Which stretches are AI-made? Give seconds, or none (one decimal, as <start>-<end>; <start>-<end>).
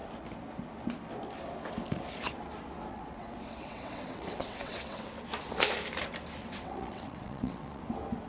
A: 2.9-5.0; 6.4-7.8